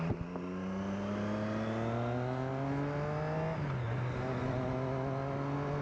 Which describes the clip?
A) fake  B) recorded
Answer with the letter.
B